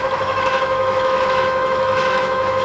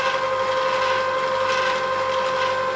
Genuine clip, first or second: second